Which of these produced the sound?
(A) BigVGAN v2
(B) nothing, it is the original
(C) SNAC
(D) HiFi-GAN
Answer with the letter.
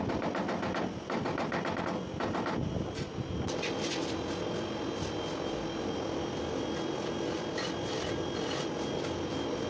B